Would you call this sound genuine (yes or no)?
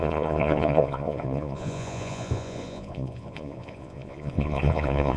no